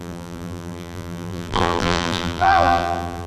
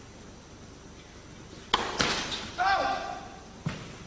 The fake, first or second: first